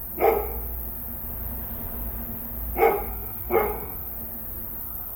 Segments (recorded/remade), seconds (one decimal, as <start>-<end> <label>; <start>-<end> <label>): 0.0-3.1 recorded; 3.1-4.1 remade; 4.1-4.8 recorded; 4.8-5.2 remade